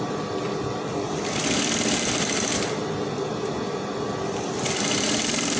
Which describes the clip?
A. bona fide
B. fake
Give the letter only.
A